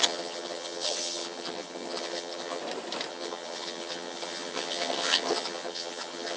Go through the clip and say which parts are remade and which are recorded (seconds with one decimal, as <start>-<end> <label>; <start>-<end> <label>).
0.0-2.6 remade; 2.6-3.1 recorded; 3.1-6.4 remade